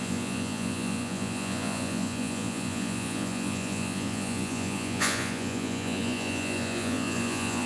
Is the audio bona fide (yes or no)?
no